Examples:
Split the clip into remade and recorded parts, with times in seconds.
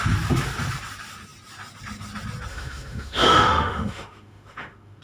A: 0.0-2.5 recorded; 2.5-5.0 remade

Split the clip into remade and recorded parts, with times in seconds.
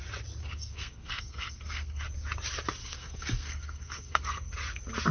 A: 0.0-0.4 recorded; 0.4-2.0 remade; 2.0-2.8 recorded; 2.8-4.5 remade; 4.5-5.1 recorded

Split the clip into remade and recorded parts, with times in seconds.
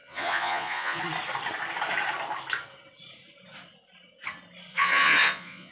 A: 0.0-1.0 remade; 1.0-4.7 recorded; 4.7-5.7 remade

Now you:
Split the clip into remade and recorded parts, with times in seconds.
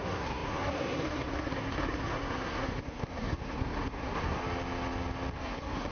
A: 0.0-4.4 remade; 4.4-5.3 recorded; 5.3-5.9 remade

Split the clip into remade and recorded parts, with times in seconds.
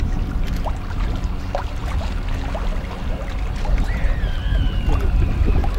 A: 0.0-5.8 recorded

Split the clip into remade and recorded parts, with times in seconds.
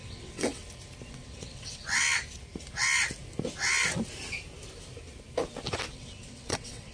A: 0.0-0.6 remade; 0.6-1.1 recorded; 1.1-1.8 remade; 1.8-5.9 recorded; 5.9-6.9 remade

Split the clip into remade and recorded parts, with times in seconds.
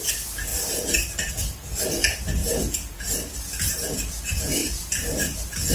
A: 0.0-0.5 recorded; 0.5-1.3 remade; 1.3-4.6 recorded; 4.6-5.7 remade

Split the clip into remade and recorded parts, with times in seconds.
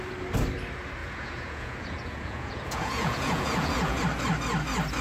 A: 0.0-1.0 recorded; 1.0-4.0 remade; 4.0-5.0 recorded